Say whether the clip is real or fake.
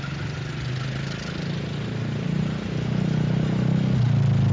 real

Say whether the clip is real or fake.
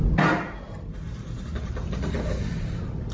real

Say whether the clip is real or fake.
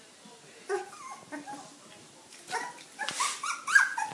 real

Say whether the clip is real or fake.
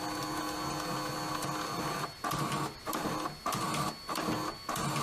real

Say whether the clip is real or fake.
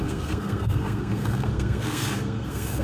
fake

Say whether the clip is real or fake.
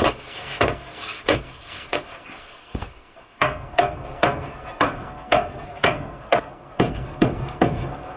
fake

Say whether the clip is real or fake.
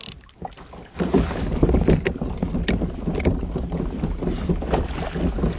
real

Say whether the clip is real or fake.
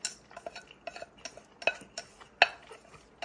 real